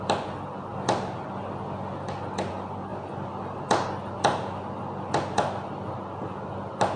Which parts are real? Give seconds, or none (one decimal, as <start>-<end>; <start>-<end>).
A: 0.0-7.0